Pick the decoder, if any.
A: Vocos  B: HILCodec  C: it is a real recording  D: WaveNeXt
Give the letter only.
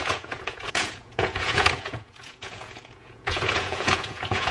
A